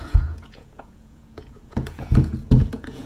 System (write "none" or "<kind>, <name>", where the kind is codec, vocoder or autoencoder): vocoder, Vocos